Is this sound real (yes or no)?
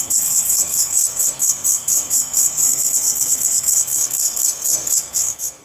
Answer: no